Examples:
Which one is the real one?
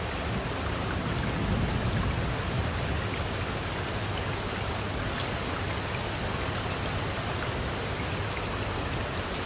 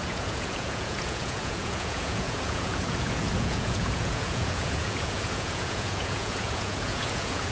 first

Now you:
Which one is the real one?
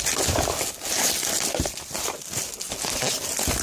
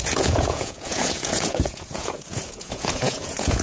first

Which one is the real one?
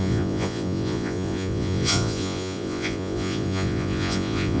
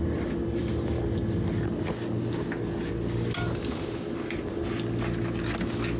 second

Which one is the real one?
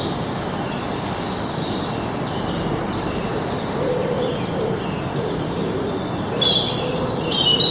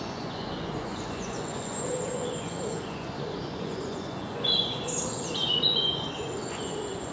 first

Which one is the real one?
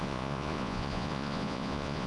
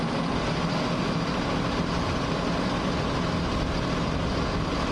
second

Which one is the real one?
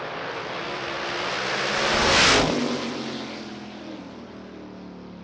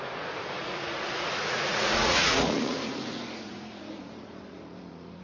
first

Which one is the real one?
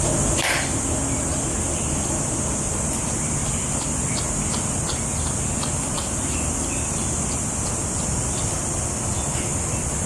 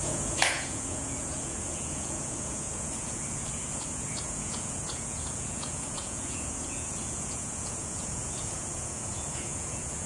first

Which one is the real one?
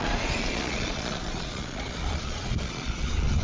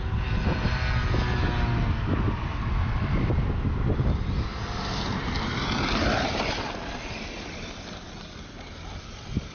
second